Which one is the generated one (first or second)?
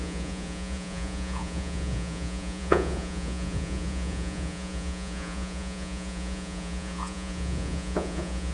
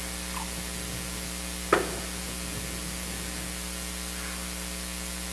first